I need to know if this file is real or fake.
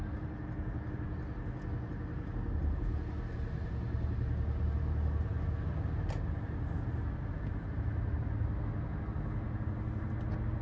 real